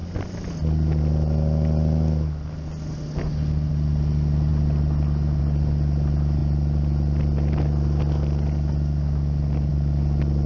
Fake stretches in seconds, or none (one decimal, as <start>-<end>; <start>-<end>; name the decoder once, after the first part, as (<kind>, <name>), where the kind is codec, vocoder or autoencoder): none